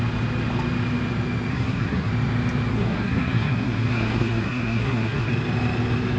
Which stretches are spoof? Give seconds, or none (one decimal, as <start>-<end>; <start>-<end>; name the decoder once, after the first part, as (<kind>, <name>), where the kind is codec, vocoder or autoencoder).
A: 1.5-2.1 (codec, SNAC); 2.7-5.3

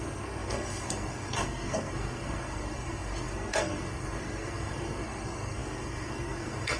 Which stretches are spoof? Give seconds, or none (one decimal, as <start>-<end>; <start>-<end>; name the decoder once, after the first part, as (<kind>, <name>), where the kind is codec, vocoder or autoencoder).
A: 0.0-6.8 (codec, SNAC)